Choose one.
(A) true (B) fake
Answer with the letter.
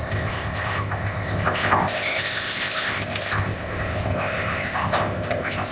B